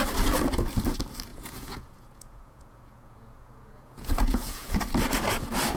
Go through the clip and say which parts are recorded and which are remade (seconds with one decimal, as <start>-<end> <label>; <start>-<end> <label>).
0.0-1.3 recorded; 1.3-4.8 remade; 4.8-5.8 recorded